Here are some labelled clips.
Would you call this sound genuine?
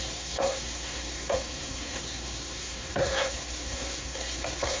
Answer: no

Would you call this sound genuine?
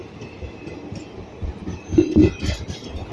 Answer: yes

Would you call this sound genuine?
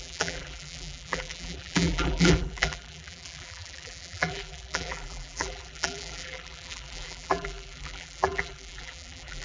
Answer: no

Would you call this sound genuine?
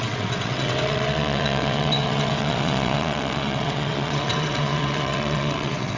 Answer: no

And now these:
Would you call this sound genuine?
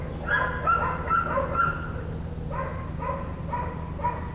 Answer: yes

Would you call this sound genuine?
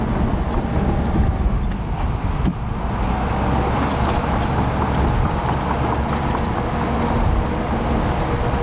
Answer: yes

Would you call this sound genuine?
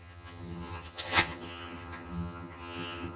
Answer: no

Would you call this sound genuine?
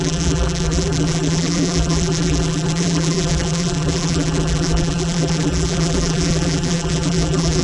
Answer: no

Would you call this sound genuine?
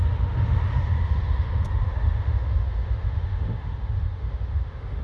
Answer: no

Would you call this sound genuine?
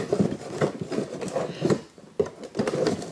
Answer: yes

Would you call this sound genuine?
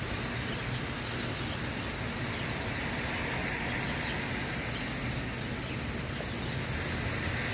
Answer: yes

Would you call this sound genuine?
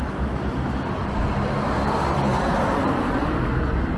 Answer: yes